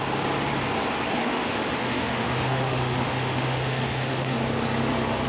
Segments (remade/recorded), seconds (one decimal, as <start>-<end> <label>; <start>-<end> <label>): 0.0-1.2 recorded; 1.2-4.4 remade; 4.4-5.3 recorded